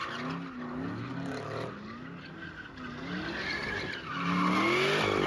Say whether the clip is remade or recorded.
recorded